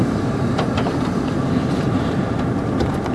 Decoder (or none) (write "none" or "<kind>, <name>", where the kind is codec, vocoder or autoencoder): vocoder, BigVGAN v2